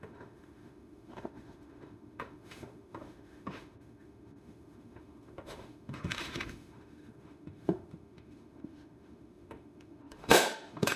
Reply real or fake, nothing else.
fake